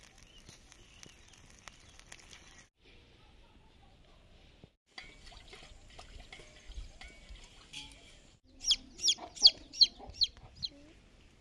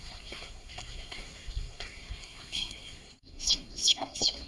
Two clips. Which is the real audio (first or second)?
first